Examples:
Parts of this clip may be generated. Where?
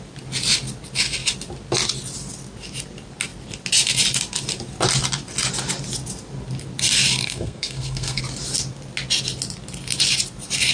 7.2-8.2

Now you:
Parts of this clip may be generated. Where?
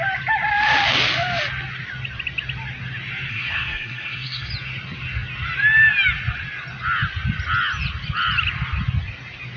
3.3-4.5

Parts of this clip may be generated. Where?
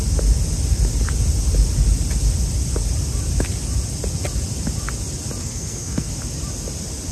5.4-6.1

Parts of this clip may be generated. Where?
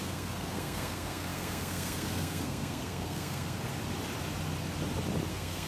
0.0-3.7; 5.3-5.7